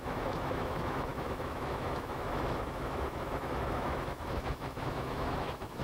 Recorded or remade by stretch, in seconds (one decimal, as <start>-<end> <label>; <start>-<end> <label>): 0.0-5.8 remade